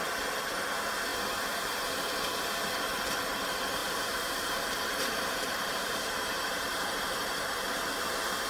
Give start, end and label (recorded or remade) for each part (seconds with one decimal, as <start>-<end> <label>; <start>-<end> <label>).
0.0-3.8 recorded; 3.8-7.8 remade; 7.8-8.5 recorded